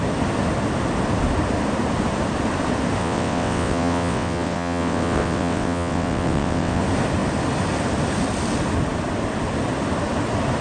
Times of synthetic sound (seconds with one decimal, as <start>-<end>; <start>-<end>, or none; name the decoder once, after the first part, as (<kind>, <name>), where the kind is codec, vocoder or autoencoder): 3.0-6.8 (vocoder, WaveNeXt)